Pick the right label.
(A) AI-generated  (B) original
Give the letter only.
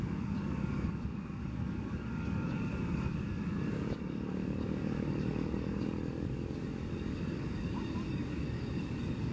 A